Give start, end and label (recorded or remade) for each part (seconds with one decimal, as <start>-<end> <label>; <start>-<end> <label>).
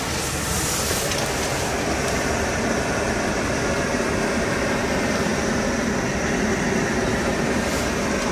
0.0-8.3 recorded